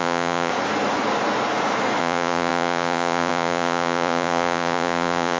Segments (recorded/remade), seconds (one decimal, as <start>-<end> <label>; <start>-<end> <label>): 0.0-0.5 remade; 0.5-2.0 recorded; 2.0-5.4 remade